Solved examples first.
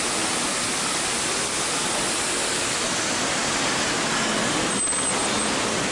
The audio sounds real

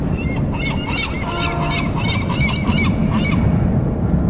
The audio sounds real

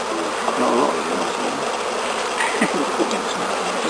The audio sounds real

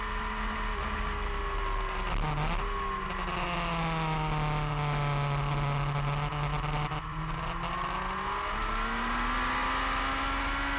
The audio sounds real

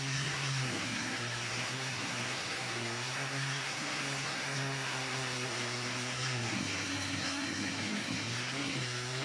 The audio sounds fake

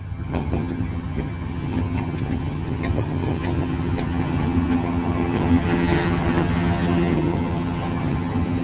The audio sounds fake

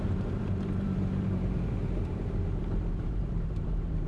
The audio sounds fake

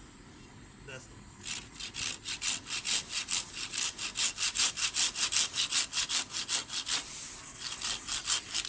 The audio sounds real